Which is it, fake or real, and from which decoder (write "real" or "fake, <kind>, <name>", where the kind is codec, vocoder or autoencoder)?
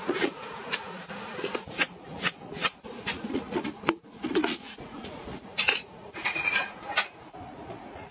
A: fake, vocoder, Vocos